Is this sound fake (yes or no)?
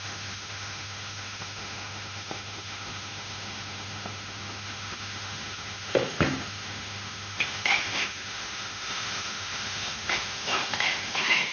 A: yes